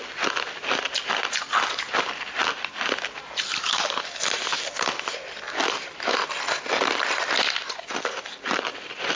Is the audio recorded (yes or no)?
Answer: no